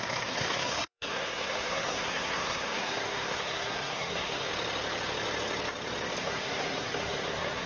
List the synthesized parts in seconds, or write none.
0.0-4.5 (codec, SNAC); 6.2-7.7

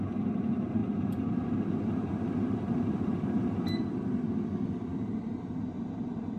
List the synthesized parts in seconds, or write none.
0.0-6.4 (vocoder, BigVGAN v2)

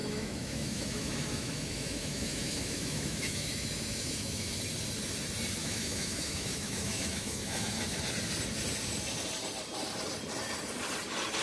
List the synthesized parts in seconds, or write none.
0.0-4.6 (autoencoder, DAC-VAE); 5.6-8.0

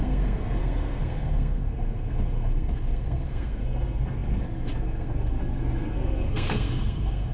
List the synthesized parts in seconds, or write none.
0.0-7.3 (codec, SNAC)

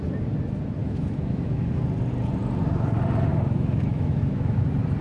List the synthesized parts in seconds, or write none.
0.8-1.8 (autoencoder, DAC-VAE); 3.3-4.6